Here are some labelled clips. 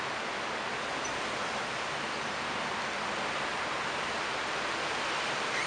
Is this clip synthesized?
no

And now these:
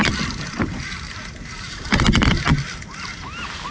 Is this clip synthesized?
no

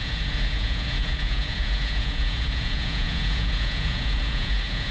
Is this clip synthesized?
yes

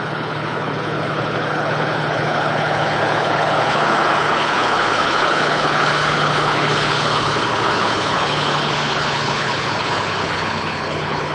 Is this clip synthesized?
yes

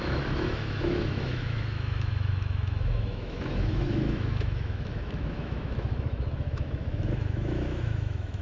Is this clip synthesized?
yes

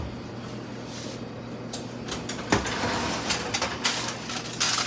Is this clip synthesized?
no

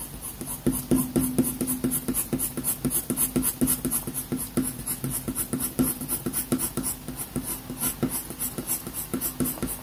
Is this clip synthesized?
no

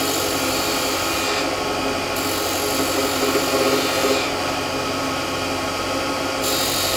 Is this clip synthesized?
no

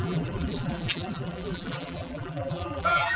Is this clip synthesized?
yes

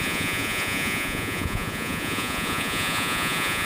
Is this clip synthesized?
yes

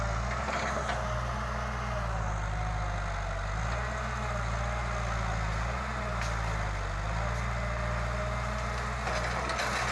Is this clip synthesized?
no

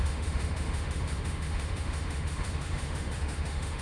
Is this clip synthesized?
yes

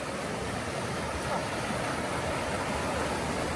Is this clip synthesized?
no